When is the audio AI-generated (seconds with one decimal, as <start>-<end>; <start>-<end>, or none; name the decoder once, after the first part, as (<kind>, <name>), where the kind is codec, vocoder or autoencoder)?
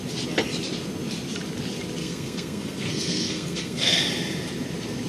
2.0-4.0 (codec, SNAC)